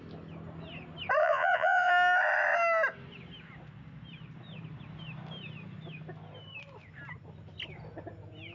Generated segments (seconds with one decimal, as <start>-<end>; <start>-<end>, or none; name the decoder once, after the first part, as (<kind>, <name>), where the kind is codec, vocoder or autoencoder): 1.2-1.9 (vocoder, Vocos)